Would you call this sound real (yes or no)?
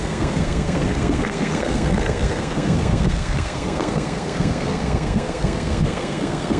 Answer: no